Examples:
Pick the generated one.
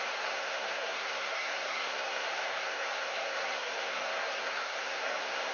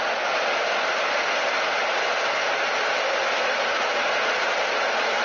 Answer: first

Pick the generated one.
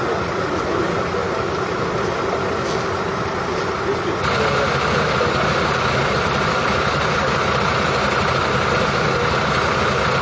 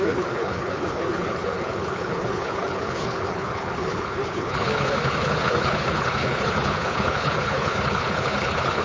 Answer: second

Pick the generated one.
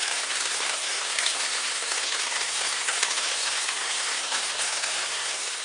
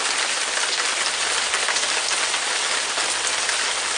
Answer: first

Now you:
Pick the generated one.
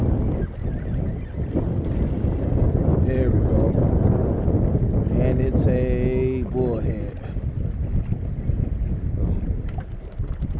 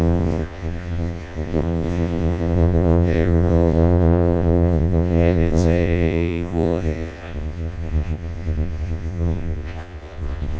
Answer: second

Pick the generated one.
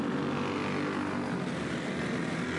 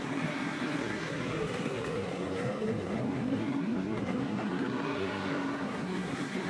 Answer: second